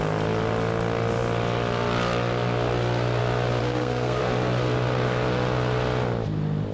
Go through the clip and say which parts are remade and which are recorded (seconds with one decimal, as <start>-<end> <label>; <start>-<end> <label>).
0.0-3.6 recorded; 3.6-4.2 remade; 4.2-6.7 recorded